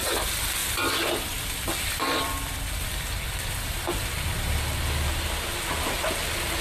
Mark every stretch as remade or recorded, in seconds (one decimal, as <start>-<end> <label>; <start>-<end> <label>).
0.0-0.6 recorded; 0.6-4.6 remade; 4.6-6.6 recorded